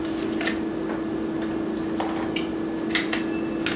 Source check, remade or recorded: recorded